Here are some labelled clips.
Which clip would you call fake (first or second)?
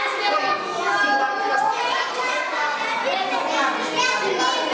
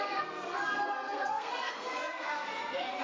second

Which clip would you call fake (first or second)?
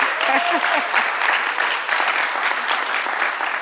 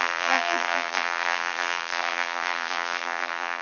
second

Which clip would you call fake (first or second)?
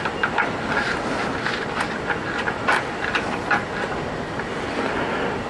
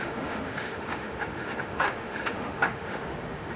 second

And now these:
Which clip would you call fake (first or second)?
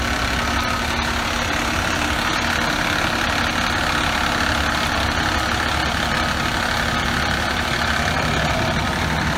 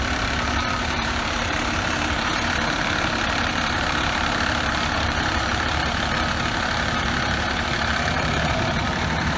second